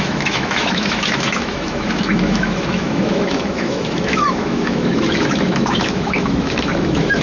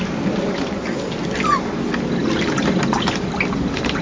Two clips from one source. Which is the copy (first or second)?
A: first